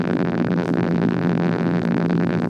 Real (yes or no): no